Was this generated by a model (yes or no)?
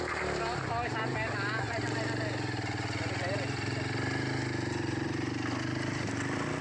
no